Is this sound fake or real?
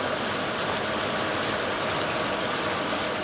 real